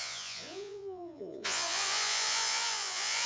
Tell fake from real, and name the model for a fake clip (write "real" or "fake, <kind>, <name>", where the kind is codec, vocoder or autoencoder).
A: fake, vocoder, Vocos